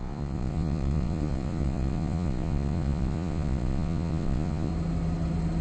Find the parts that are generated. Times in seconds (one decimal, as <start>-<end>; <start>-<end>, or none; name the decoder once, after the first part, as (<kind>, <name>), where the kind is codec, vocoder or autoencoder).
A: 0.0-4.7 (vocoder, Vocos)